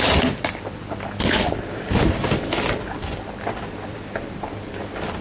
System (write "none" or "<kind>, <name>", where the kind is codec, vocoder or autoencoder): none